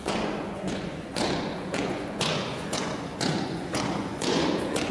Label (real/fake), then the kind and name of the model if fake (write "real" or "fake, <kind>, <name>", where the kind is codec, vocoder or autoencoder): fake, vocoder, Vocos